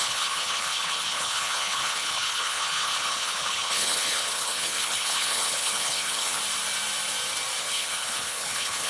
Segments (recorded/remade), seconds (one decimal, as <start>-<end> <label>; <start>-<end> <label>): 0.0-6.4 remade; 6.4-7.6 recorded; 7.6-8.9 remade